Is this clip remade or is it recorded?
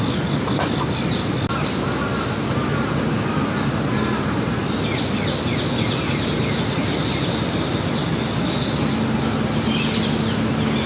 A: recorded